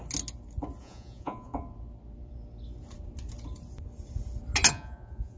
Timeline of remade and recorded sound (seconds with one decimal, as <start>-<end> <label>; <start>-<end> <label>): 0.0-0.8 recorded; 0.8-1.5 remade; 1.5-4.7 recorded; 4.7-5.4 remade